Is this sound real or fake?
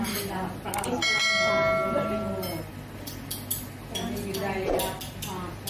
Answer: real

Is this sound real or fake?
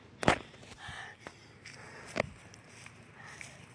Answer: real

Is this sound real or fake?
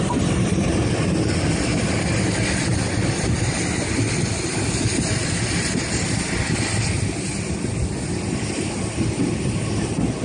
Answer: real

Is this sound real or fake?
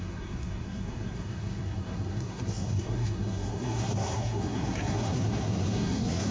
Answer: fake